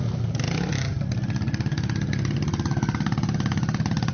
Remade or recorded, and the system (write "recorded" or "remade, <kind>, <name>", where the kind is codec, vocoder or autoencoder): recorded